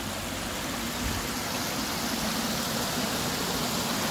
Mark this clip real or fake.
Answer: real